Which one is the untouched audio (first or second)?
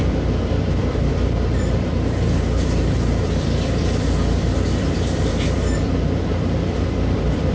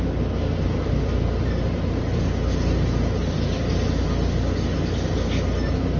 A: second